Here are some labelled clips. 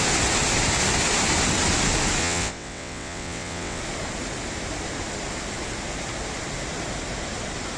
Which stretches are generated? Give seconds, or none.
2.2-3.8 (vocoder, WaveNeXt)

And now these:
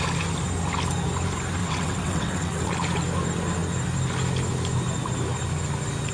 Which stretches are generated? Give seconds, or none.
1.6-2.7 (vocoder, WaveNeXt)